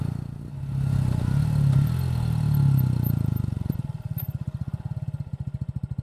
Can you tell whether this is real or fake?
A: real